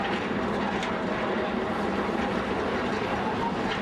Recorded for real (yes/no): no